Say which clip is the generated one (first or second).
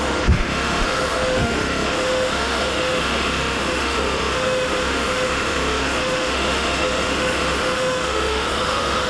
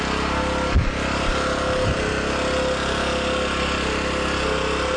first